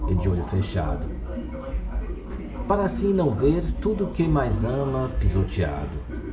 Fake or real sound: real